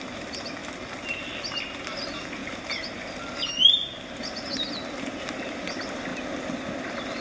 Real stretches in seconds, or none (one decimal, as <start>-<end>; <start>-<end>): 0.6-1.8; 2.4-4.2; 6.1-6.8